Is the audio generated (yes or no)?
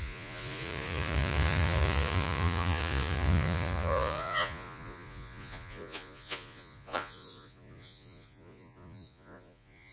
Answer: yes